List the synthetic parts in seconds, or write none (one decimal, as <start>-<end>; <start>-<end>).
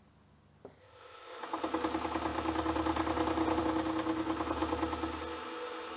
0.8-1.4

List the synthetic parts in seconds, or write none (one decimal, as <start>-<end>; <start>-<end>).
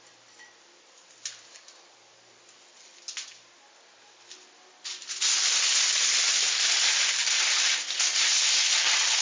none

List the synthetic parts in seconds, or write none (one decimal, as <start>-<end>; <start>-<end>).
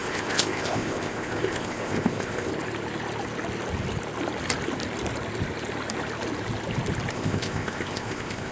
0.0-2.5; 7.1-8.5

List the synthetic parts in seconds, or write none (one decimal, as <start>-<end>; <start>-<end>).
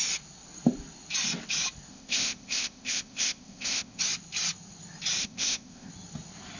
1.9-4.0; 5.2-5.9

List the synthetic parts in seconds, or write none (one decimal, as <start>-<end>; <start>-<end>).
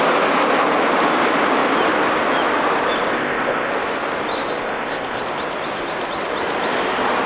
3.1-3.7; 4.6-5.2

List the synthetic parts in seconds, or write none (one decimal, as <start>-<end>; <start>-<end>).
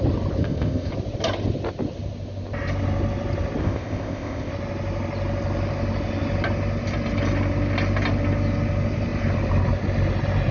0.4-0.9; 3.6-4.5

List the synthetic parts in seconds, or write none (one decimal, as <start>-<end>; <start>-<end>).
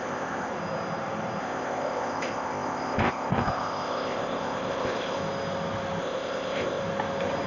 0.0-0.5; 1.4-5.2; 6.0-6.8